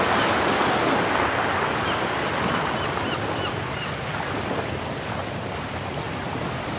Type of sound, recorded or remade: recorded